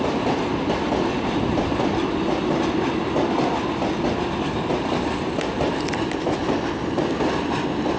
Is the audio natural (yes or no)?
yes